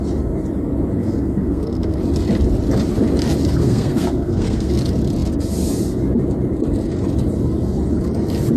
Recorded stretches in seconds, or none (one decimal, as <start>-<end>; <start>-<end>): 0.0-1.0; 2.0-3.6; 4.7-8.6